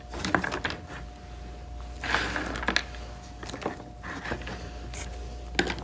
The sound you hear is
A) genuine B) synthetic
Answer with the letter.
A